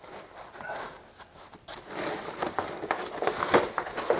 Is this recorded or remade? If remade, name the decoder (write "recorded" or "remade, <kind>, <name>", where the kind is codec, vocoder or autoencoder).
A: recorded